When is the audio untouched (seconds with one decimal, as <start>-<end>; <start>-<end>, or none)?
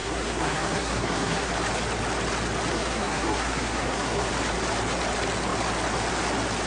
1.5-2.7; 4.3-6.7